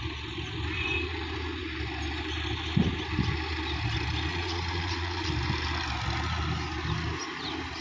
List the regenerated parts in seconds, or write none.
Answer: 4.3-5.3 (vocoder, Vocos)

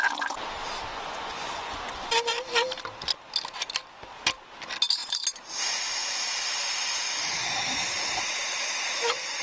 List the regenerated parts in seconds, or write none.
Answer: 0.9-2.1 (vocoder, Vocos)

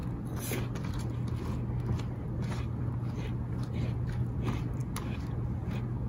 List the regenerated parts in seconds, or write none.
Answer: none

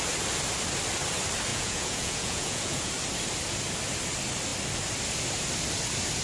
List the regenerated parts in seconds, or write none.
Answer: 1.5-2.9 (vocoder, Vocos)